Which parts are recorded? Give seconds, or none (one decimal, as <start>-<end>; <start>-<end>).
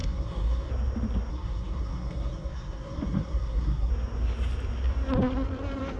0.7-1.3; 3.9-6.0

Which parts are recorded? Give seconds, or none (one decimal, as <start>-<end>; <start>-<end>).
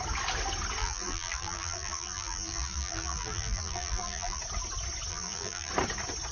0.0-0.8; 4.4-5.1; 5.7-6.3